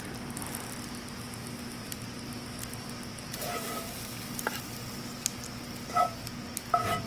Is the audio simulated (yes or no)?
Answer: no